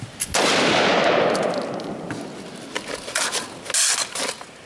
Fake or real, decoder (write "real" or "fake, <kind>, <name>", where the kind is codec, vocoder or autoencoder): real